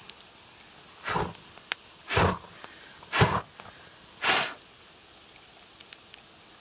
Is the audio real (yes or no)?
yes